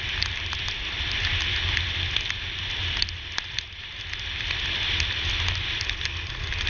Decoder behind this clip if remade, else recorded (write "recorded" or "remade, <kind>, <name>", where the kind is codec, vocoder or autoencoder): recorded